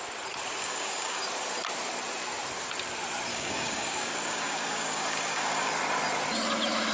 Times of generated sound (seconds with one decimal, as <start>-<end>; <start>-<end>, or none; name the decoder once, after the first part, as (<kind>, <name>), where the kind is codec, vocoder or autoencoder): 0.6-1.2 (codec, DAC); 3.3-5.7